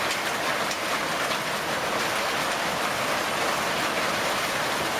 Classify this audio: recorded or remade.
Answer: recorded